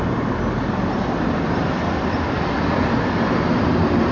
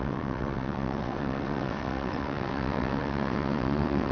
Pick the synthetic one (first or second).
second